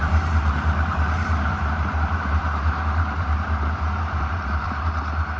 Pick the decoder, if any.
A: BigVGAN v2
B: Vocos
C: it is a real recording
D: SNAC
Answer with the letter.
A